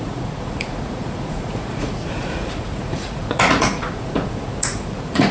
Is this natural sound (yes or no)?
no